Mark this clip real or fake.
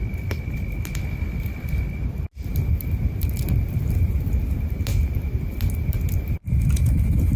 real